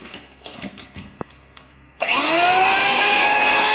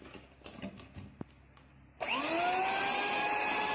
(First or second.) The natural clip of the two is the second